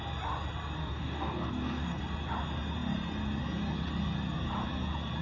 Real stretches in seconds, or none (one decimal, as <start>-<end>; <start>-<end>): 0.0-0.8; 2.0-5.2